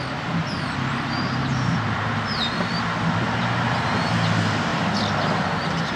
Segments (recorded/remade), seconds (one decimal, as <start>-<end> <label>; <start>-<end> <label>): 0.0-0.4 recorded; 0.4-4.0 remade; 4.0-4.7 recorded; 4.7-6.0 remade